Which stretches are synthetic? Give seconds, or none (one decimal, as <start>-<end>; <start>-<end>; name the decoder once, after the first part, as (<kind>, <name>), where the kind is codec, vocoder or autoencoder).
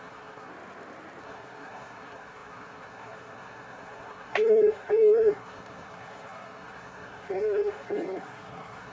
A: 0.0-0.5 (codec, SNAC); 1.2-8.9